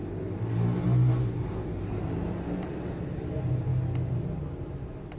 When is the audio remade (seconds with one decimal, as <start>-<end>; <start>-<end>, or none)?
1.2-3.7; 4.5-5.2